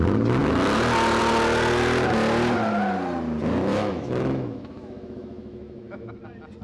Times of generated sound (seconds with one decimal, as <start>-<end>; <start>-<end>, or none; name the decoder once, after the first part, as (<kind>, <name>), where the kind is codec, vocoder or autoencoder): 3.7-6.1 (autoencoder, DAC-VAE)